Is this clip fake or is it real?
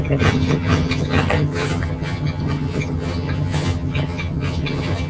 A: fake